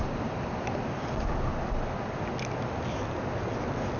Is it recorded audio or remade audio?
recorded